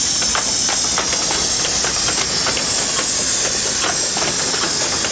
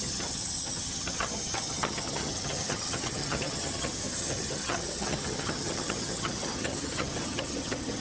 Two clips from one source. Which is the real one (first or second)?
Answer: first